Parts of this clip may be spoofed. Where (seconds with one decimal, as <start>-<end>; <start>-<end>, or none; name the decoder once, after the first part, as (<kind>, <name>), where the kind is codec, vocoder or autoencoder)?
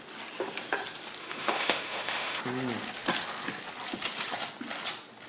1.2-2.4 (autoencoder, DAC-VAE)